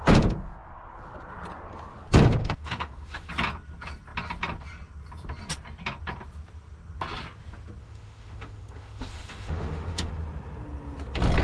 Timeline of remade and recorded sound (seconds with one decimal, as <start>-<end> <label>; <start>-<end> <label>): 0.0-2.4 recorded; 2.4-3.3 remade; 3.3-7.8 recorded; 7.8-10.1 remade; 10.1-11.4 recorded